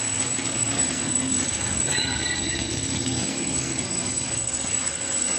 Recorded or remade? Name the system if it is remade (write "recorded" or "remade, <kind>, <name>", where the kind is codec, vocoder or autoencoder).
remade, codec, SNAC